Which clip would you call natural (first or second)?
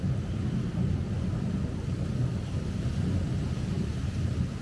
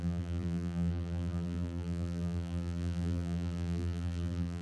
first